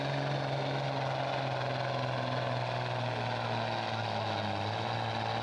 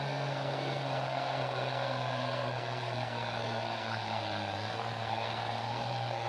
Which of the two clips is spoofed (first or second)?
second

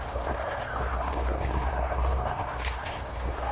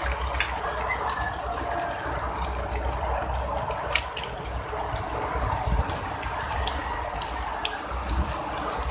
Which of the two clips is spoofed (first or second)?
first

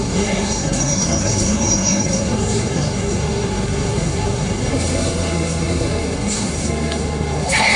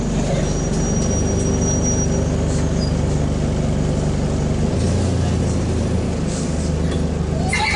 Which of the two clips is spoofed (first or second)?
first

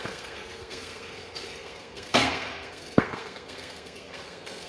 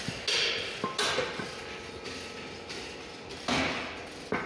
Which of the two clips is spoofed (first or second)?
first